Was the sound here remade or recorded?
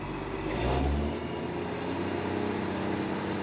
recorded